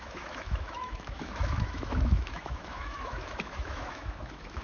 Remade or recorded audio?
remade